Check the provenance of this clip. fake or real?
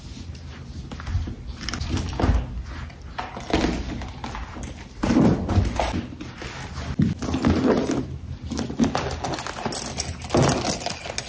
real